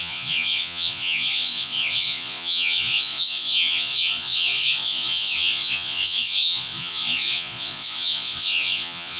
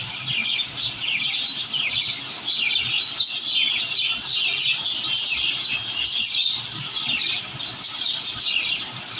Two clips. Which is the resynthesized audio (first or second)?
first